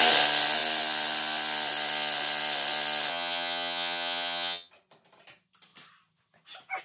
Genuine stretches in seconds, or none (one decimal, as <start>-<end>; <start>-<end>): 0.0-3.1; 4.7-6.8